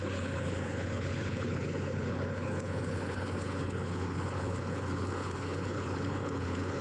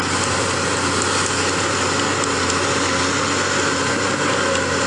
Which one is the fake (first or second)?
first